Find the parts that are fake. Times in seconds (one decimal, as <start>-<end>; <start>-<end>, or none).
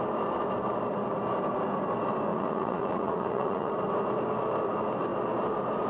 2.3-3.7